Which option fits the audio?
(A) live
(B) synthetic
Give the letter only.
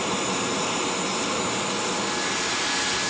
A